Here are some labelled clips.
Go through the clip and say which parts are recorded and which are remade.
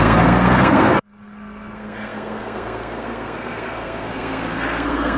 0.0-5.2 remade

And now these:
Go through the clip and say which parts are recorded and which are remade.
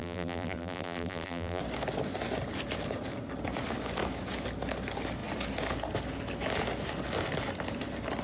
0.0-1.6 remade; 1.6-8.2 recorded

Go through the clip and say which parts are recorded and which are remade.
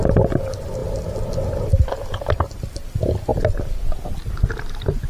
0.0-5.1 recorded